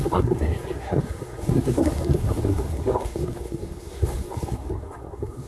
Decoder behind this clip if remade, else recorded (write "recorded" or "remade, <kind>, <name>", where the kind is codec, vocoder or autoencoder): remade, codec, SNAC